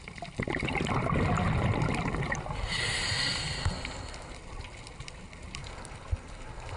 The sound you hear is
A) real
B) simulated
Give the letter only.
A